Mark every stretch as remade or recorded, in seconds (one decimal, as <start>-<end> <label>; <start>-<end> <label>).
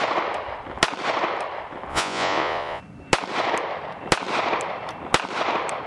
0.0-1.9 recorded; 1.9-2.8 remade; 2.8-5.9 recorded